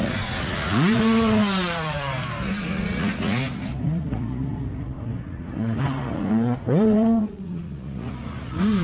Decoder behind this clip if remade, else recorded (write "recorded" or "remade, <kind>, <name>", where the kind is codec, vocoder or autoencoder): remade, vocoder, Vocos